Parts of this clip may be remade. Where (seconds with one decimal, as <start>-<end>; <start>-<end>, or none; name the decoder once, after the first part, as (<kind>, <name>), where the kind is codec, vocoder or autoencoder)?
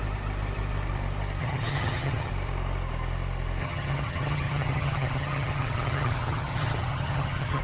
1.4-2.3 (vocoder, HiFi-GAN); 3.6-7.6